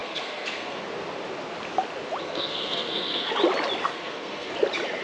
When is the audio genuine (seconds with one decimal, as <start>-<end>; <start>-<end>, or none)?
0.8-2.2; 3.3-3.9; 4.5-5.0